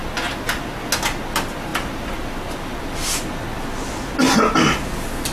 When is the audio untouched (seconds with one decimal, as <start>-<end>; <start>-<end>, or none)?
0.0-5.3